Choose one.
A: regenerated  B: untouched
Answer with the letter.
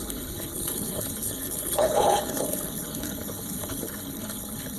A